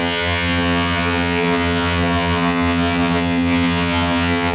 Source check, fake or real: fake